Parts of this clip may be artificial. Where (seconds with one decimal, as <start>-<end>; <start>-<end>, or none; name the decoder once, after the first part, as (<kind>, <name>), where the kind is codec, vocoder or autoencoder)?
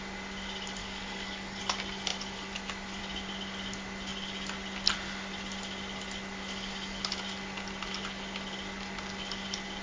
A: 0.8-1.6 (codec, DAC)